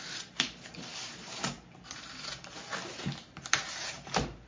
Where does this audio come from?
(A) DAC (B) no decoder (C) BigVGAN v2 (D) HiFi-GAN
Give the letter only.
B